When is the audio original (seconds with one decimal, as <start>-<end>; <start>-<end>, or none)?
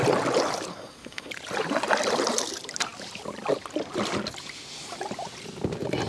0.0-0.7; 1.3-6.1